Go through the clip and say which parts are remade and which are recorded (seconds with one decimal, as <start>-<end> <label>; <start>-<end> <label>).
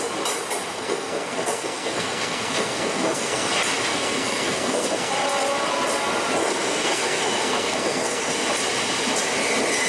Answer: 0.0-0.7 recorded; 0.7-3.5 remade; 3.5-3.9 recorded; 3.9-5.1 remade; 5.1-6.4 recorded; 6.4-8.3 remade; 8.3-9.9 recorded